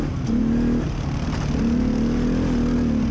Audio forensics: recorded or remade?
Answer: recorded